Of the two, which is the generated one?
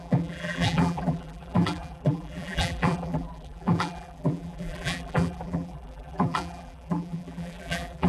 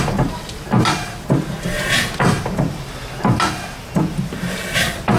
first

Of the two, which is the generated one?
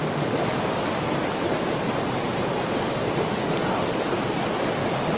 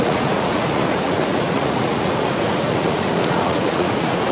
second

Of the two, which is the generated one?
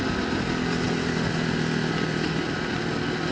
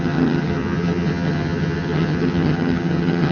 second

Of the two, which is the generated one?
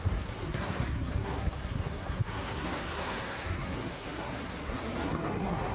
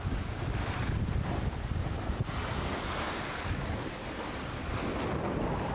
first